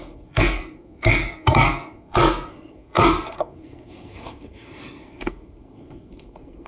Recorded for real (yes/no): no